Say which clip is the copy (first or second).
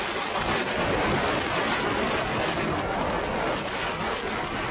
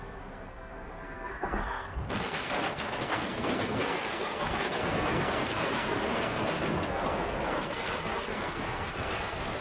second